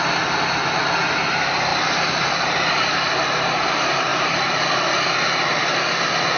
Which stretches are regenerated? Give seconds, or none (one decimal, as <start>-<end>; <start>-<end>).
1.7-3.6; 4.1-4.7